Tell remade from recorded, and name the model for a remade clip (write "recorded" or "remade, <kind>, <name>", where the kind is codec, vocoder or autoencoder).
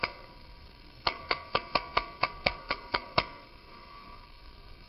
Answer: remade, codec, SNAC